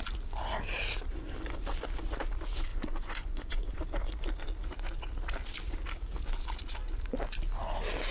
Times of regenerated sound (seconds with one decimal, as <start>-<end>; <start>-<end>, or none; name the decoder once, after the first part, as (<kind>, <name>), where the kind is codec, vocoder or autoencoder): 2.7-3.8 (vocoder, Vocos)